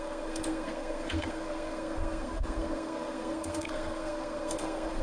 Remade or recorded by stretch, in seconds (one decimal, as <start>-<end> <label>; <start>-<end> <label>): 0.0-5.0 remade